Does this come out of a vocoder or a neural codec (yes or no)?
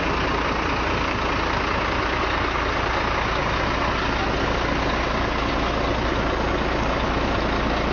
no